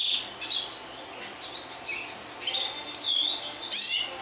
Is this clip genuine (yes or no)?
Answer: yes